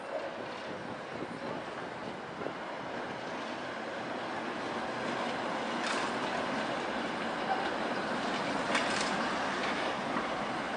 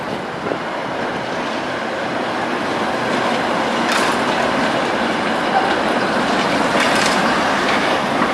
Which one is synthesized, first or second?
second